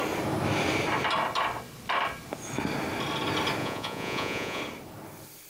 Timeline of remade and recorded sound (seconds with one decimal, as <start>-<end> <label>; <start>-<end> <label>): 0.0-3.6 recorded; 3.6-4.6 remade; 4.6-5.5 recorded